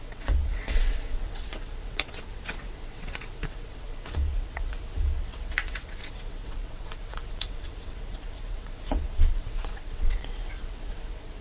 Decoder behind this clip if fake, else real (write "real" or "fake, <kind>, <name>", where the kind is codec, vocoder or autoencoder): fake, vocoder, WaveNeXt